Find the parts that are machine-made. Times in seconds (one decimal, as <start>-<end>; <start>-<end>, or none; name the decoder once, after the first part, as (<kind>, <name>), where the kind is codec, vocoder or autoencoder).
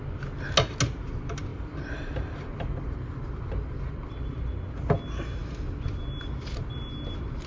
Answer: 1.5-4.4 (vocoder, BigVGAN v2)